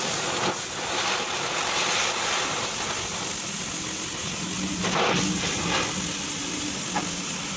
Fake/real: real